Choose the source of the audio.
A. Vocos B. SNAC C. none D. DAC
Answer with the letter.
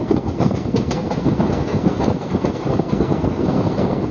B